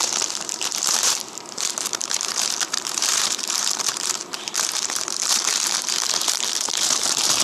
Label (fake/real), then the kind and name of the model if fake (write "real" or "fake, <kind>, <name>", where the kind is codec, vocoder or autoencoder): fake, vocoder, BigVGAN v2